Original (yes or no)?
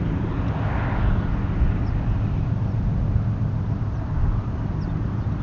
yes